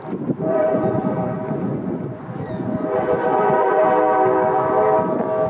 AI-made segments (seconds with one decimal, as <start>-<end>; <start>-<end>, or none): 0.5-3.8